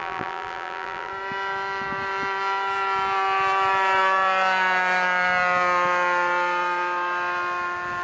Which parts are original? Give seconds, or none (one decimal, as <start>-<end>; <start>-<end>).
1.1-8.0